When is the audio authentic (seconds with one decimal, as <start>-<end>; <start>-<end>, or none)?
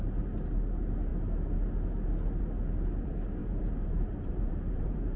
0.0-3.4